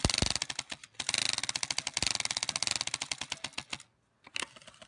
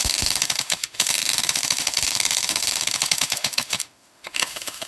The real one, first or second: first